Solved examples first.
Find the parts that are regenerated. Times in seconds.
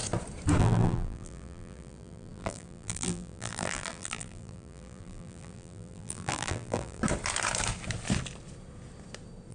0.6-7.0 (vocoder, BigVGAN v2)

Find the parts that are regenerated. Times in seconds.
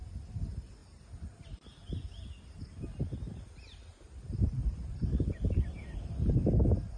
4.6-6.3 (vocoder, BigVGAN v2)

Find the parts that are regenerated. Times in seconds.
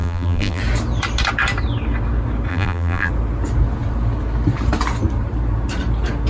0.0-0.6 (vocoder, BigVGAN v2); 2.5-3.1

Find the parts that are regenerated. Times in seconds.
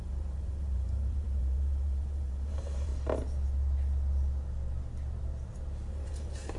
0.0-2.9 (vocoder, BigVGAN v2); 5.9-6.6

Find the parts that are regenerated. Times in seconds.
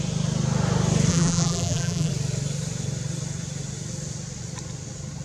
1.1-2.1 (vocoder, BigVGAN v2)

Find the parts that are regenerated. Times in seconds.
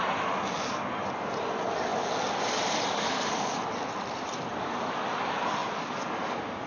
none